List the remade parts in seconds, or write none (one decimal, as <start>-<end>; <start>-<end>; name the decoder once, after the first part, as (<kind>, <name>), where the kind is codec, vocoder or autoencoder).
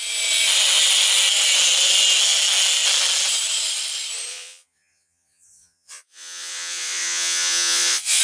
4.3-8.2 (vocoder, Vocos)